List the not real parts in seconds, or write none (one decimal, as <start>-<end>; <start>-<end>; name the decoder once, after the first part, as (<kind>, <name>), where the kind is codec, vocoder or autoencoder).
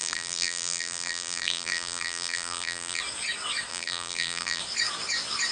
0.0-3.0 (vocoder, BigVGAN v2); 3.7-4.6